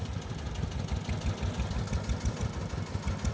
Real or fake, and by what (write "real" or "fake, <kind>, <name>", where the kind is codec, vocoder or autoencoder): real